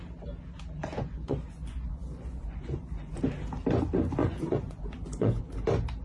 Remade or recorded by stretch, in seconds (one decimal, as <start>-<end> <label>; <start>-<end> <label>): 0.0-0.8 recorded; 0.8-3.2 remade; 3.2-4.2 recorded; 4.2-5.4 remade; 5.4-6.0 recorded